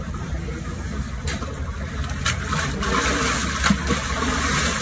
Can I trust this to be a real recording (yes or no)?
yes